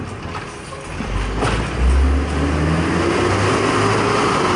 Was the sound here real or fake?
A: real